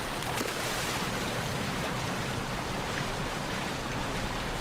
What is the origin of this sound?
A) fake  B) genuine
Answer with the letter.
A